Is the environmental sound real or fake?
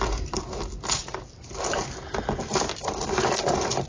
real